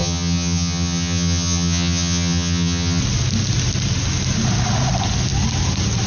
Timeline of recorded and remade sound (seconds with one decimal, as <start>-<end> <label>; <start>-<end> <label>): 0.0-3.0 remade; 3.0-6.1 recorded